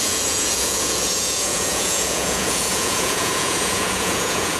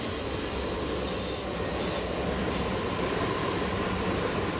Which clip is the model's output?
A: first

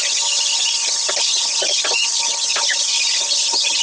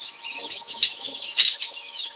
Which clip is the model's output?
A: second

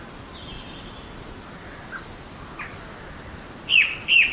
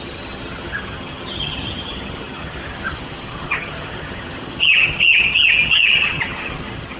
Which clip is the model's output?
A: second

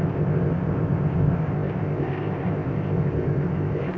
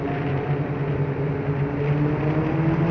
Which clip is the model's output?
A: first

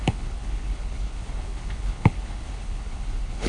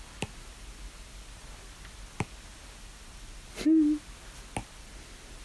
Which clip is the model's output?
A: first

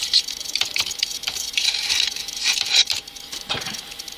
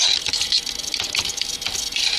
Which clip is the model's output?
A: first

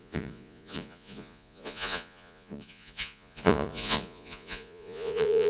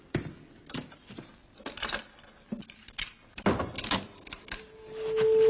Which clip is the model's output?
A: first